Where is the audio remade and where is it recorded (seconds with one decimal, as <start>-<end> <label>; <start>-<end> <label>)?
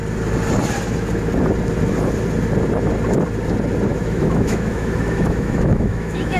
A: 0.0-3.9 recorded; 3.9-6.4 remade